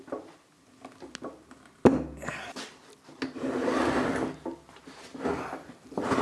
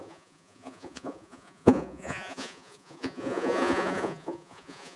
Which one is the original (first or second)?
first